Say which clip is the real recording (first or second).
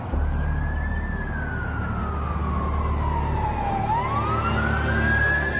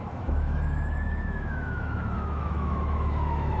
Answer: first